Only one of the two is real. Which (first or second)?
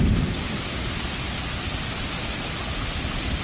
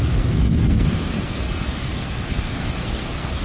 first